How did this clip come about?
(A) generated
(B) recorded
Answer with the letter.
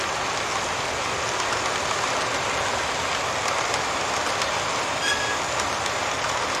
B